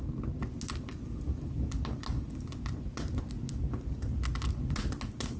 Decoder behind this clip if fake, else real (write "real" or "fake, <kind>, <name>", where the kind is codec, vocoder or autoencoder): real